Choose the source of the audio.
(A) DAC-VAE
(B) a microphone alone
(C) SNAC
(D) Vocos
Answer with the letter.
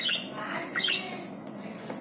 D